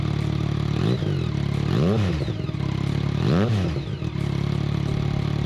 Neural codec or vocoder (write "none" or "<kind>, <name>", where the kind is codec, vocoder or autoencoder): none